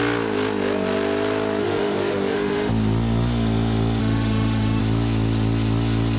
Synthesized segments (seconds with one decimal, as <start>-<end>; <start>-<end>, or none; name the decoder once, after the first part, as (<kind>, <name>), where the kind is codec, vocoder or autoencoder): 1.6-2.7 (autoencoder, DAC-VAE); 4.0-4.8